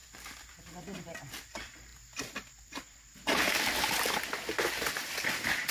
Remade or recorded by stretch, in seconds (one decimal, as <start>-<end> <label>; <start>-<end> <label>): 0.0-5.7 recorded